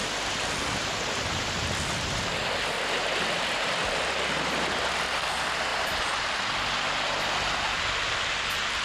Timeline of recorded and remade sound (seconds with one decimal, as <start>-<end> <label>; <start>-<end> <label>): 0.0-8.8 recorded